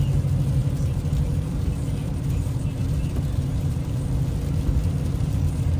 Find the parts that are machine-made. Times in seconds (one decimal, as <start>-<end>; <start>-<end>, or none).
0.6-4.1